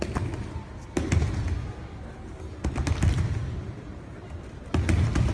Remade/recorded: recorded